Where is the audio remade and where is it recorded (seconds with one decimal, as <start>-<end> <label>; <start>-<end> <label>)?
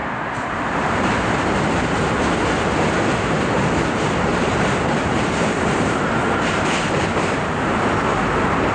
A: 0.0-2.1 remade; 2.1-4.3 recorded; 4.3-6.1 remade; 6.1-8.7 recorded